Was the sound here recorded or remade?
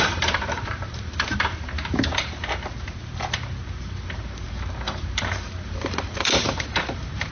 remade